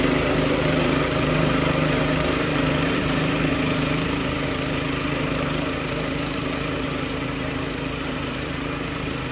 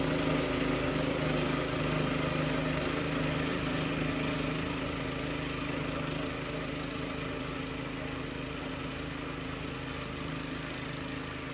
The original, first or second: second